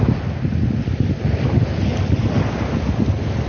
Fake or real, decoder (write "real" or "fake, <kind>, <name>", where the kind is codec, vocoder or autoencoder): real